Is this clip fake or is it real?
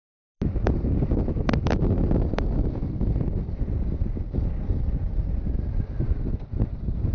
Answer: real